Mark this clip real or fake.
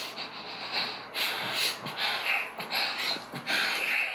real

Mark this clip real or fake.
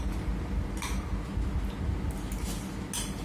real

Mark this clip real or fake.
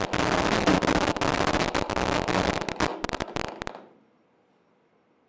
real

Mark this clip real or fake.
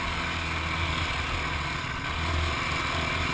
real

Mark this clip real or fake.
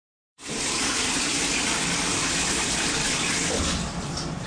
fake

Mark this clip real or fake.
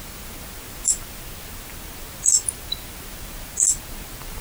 real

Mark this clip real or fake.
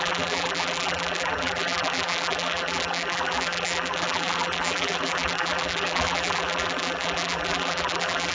fake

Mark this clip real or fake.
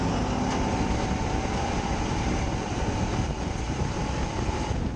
real